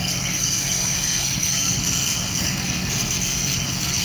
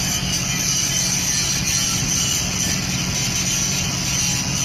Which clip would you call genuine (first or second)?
second